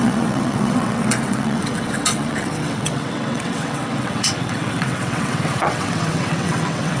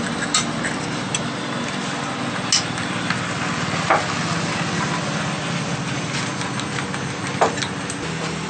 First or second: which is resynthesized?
first